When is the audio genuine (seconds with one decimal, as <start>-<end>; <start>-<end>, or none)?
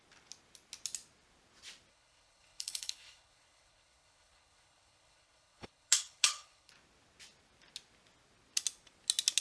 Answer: 0.0-1.9; 6.7-9.4